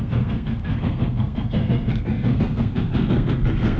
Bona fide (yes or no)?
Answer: no